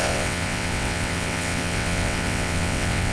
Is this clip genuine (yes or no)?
no